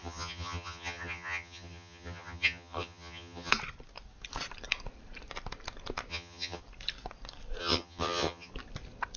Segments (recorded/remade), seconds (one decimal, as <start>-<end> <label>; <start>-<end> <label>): 0.0-3.5 remade; 3.5-6.1 recorded; 6.1-6.6 remade; 6.6-7.6 recorded; 7.6-8.5 remade; 8.5-9.2 recorded